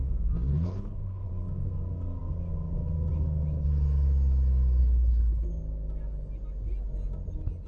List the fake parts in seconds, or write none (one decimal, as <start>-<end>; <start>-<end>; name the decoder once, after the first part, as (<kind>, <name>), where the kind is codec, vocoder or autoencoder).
0.5-1.3 (codec, HILCodec); 4.8-5.5